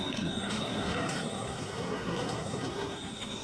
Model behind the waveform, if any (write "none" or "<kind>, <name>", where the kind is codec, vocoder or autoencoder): codec, SNAC